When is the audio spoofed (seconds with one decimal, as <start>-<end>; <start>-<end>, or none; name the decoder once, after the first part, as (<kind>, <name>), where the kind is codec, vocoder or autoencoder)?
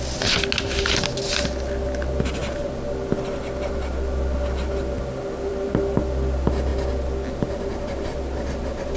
none